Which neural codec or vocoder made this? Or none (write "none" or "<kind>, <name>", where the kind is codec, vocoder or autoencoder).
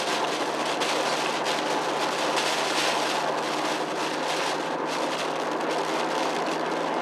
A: none